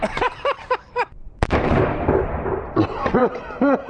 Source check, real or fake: fake